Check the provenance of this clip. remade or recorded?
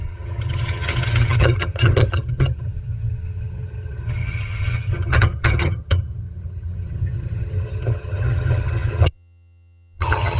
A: remade